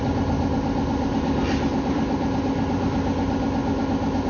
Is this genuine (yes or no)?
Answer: yes